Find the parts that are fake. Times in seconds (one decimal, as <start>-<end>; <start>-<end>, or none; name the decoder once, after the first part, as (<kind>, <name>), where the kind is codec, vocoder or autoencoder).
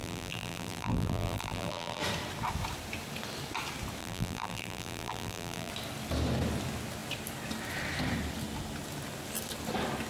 0.0-2.0 (vocoder, BigVGAN v2); 4.0-5.7